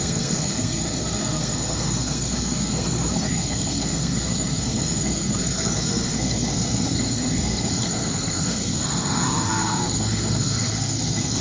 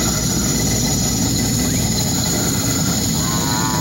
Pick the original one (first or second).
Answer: second